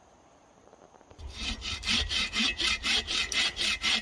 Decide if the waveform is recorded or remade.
remade